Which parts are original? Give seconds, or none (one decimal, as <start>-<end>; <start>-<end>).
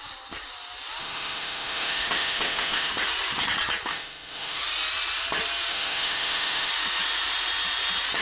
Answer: 0.0-1.0; 2.9-3.9; 4.6-5.7; 6.7-8.2